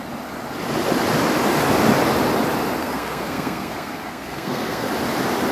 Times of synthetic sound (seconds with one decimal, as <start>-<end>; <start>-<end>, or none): 2.8-4.9

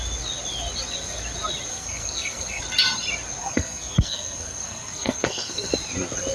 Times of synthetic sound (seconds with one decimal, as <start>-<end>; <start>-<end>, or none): 1.7-2.6; 3.4-5.7

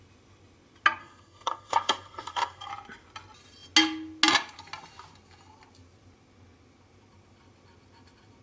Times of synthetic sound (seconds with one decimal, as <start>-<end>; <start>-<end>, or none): 1.0-2.7

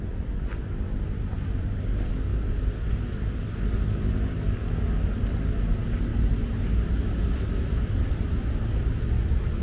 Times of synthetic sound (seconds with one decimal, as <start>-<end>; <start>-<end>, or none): none

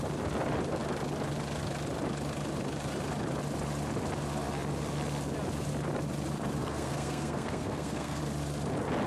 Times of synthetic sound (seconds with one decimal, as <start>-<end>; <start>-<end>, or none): 6.6-8.2

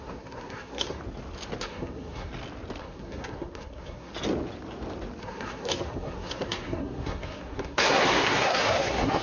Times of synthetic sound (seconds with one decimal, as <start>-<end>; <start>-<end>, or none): 0.0-1.0; 1.6-2.3; 2.8-4.1; 5.2-9.2